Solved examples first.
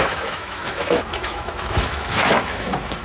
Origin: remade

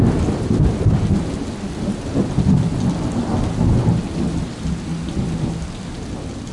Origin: recorded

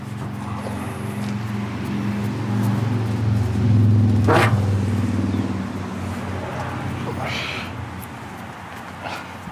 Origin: recorded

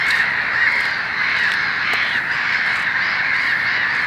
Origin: recorded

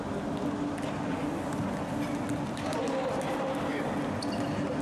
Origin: recorded